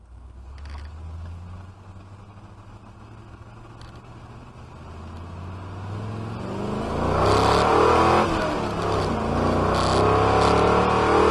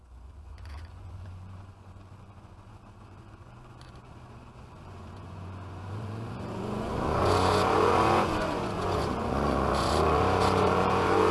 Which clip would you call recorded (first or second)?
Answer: first